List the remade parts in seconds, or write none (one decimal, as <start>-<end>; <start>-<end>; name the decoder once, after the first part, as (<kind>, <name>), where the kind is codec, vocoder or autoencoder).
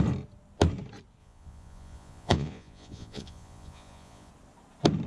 1.2-4.3 (vocoder, Vocos)